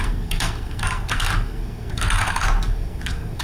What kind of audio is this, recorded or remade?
remade